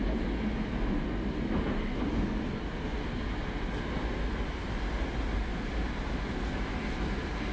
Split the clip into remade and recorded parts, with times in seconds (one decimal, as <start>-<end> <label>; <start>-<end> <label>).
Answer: 0.0-7.5 recorded